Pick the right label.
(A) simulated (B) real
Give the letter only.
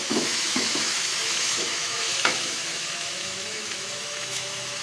A